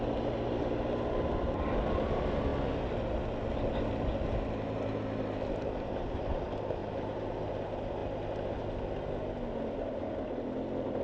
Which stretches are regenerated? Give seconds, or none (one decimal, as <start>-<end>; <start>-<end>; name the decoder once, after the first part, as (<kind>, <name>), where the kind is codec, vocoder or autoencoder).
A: none